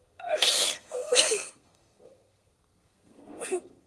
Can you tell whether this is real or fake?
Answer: fake